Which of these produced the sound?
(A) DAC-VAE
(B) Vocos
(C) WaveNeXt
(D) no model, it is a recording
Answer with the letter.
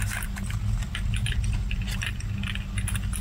D